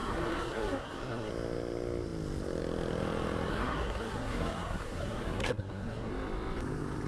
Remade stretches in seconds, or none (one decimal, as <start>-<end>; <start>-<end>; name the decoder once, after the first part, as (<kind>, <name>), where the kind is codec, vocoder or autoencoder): 0.0-1.3 (codec, SNAC); 3.5-6.1